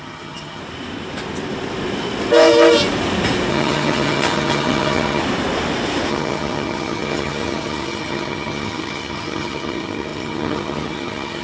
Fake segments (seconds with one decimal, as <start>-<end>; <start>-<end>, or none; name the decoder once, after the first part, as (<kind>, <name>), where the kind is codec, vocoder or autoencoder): 0.0-0.6 (vocoder, HiFi-GAN); 3.5-5.2; 6.1-11.4